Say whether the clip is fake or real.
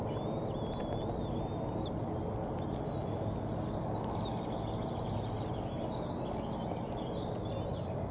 real